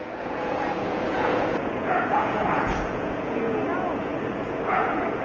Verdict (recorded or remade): remade